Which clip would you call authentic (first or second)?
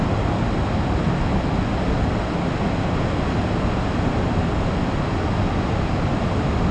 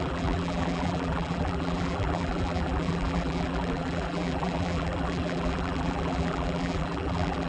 first